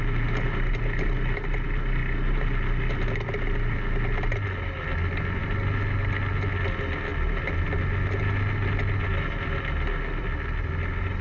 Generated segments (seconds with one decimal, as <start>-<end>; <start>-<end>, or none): none